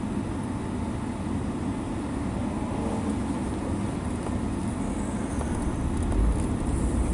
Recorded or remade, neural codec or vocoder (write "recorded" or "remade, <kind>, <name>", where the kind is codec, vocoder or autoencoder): recorded